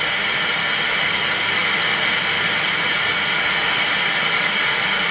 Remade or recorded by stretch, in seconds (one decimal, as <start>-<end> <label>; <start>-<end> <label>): 0.0-5.1 recorded